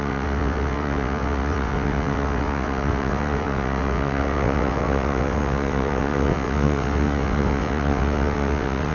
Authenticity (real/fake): fake